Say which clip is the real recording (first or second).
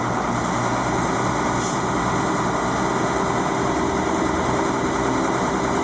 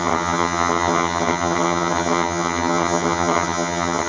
first